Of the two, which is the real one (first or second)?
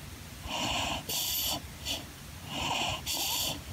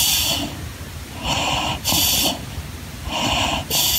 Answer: second